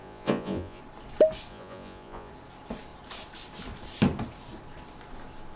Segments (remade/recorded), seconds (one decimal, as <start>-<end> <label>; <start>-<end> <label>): 0.0-0.8 remade; 0.8-1.5 recorded; 1.5-2.3 remade; 2.3-5.6 recorded